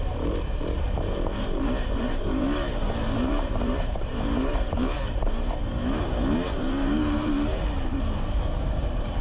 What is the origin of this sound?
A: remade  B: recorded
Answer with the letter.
A